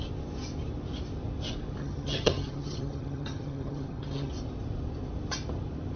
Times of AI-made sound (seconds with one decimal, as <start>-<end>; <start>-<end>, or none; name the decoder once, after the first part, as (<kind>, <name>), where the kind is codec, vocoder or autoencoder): 1.8-4.3 (vocoder, HiFi-GAN)